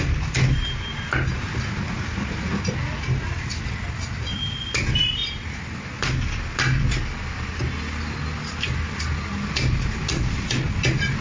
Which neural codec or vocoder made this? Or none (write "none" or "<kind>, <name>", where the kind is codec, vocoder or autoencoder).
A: none